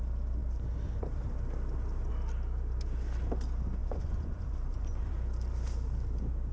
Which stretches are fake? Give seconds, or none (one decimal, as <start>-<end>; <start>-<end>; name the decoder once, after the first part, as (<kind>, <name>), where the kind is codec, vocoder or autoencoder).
3.8-5.1 (vocoder, Vocos)